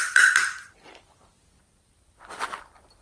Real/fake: real